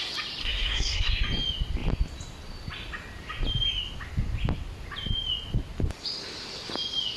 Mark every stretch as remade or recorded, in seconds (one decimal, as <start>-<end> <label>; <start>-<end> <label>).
0.0-0.4 recorded; 0.4-1.1 remade; 1.1-7.2 recorded